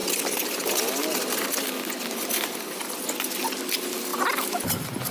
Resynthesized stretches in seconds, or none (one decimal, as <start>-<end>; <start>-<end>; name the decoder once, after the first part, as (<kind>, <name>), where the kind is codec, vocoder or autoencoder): 4.1-5.1 (vocoder, BigVGAN v2)